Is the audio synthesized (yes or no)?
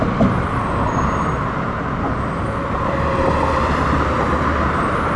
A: no